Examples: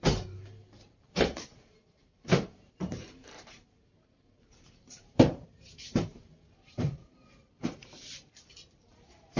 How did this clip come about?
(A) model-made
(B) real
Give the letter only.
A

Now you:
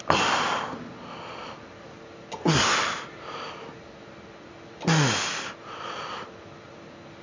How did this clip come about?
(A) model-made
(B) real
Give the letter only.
B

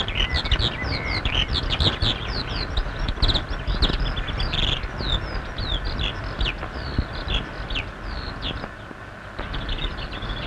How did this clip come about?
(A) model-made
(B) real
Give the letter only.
B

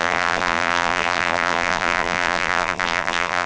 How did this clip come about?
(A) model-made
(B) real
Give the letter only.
A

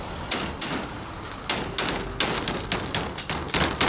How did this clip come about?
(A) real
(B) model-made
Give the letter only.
A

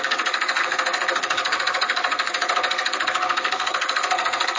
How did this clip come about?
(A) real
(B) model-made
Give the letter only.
B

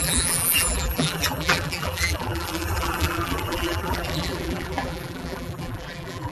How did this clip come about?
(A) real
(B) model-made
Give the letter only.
B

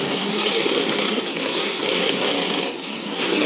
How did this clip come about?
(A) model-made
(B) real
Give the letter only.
A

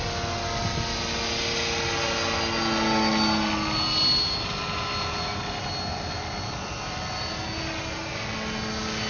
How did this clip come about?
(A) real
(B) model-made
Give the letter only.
A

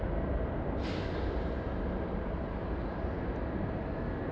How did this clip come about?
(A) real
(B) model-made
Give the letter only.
A